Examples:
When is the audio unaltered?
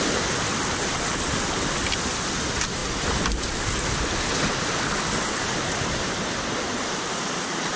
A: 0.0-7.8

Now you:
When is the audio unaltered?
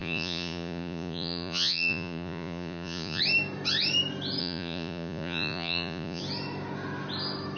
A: 3.2-4.4; 6.2-7.6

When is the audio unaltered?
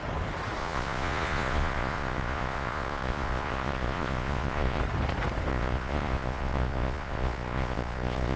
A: 0.0-0.6; 4.8-5.5